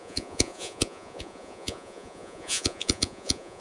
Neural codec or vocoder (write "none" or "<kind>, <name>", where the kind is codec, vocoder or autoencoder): vocoder, Vocos